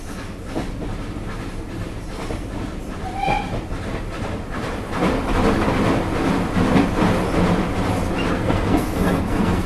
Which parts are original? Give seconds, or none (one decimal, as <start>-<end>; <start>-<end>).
0.0-8.3